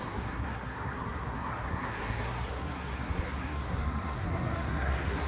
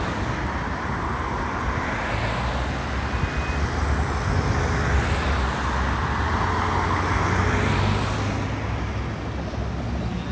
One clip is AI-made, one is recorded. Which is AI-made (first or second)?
first